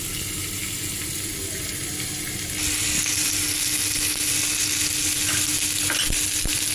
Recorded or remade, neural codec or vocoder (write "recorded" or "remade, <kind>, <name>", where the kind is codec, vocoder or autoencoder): recorded